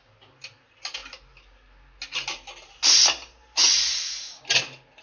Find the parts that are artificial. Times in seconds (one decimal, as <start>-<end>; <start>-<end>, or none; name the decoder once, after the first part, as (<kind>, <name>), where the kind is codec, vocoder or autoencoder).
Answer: none